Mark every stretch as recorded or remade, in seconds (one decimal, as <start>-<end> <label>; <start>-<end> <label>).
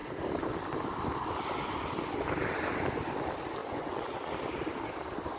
0.0-3.6 recorded; 3.6-4.3 remade; 4.3-5.4 recorded